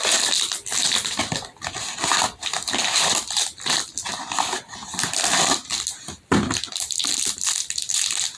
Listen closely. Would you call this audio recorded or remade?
recorded